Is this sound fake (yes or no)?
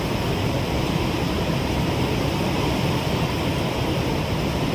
yes